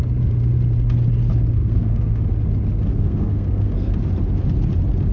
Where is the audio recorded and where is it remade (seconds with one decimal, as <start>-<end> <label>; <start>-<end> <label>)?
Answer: 0.0-1.6 recorded; 1.6-2.2 remade; 2.2-2.9 recorded; 2.9-3.9 remade; 3.9-5.1 recorded